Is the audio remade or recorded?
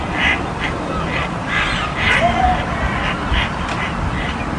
recorded